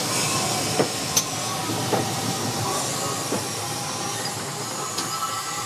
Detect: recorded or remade recorded